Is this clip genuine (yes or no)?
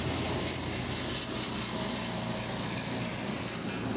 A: yes